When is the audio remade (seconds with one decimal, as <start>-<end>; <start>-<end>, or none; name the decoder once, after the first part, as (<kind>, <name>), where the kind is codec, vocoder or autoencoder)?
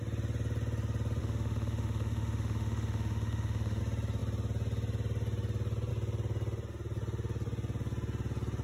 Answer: 1.2-3.8 (autoencoder, DAC-VAE)